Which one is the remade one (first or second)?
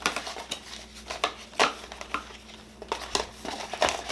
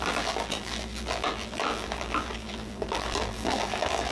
second